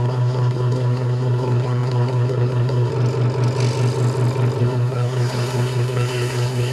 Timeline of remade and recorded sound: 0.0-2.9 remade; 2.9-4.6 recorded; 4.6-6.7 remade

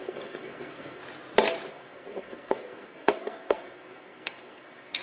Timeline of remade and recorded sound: 0.0-1.0 remade; 1.0-1.7 recorded; 1.7-5.0 remade

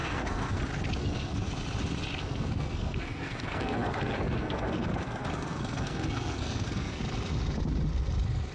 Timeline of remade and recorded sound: 0.0-0.6 remade; 0.6-1.0 recorded; 1.0-1.5 remade; 1.5-2.2 recorded; 2.2-7.0 remade; 7.0-8.5 recorded

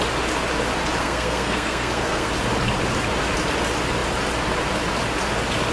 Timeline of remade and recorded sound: 0.0-1.0 recorded; 1.0-2.3 remade; 2.3-5.7 recorded

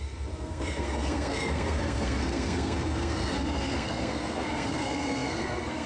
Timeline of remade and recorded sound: 0.0-5.9 remade

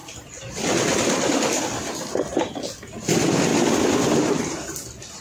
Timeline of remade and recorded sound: 0.0-5.2 recorded

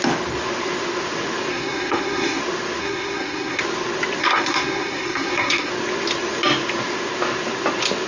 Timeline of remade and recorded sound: 0.0-1.5 recorded; 1.5-2.4 remade; 2.4-2.8 recorded; 2.8-3.6 remade; 3.6-4.2 recorded; 4.2-5.7 remade; 5.7-8.1 recorded